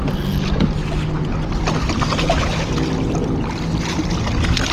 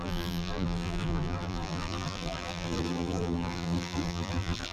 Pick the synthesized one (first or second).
second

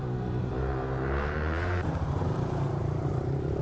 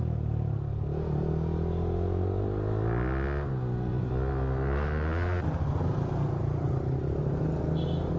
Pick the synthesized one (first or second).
first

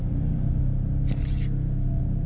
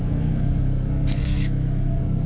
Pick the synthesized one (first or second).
second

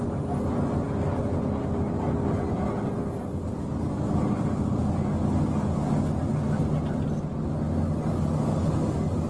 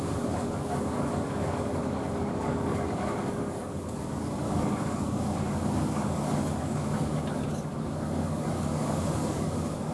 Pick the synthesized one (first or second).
second